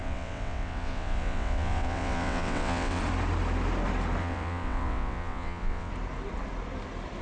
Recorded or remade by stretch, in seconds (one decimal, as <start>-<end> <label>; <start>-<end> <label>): 0.0-3.0 remade; 3.0-4.2 recorded; 4.2-5.9 remade; 5.9-7.2 recorded